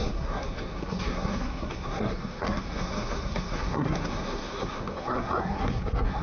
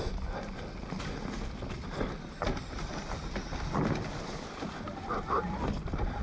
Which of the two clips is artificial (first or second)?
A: first